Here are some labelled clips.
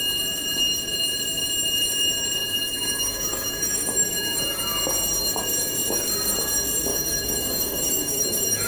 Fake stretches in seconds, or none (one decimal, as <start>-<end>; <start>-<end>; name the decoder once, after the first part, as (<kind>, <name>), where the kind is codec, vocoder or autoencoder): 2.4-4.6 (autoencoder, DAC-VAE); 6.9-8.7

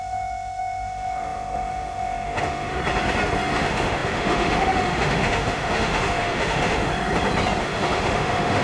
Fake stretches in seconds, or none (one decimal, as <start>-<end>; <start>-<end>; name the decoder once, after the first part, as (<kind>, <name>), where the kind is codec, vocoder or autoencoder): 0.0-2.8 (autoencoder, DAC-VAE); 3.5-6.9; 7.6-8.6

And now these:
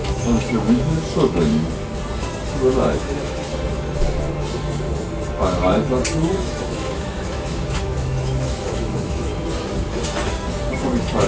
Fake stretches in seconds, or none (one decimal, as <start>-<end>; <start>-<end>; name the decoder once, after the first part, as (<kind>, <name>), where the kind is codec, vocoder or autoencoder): 0.0-1.5 (autoencoder, DAC-VAE); 2.5-3.5; 6.3-9.3

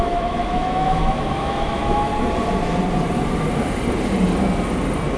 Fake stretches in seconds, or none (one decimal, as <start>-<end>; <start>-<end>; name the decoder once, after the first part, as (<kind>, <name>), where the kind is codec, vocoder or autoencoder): 0.0-2.1 (autoencoder, DAC-VAE)

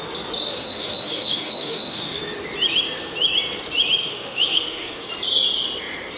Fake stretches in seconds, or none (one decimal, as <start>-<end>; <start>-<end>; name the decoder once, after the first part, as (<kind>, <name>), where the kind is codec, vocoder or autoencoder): 0.5-2.2 (autoencoder, DAC-VAE); 4.0-5.1

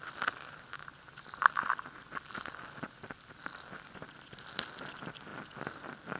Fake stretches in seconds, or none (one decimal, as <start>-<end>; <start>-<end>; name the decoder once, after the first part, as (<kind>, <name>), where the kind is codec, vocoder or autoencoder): none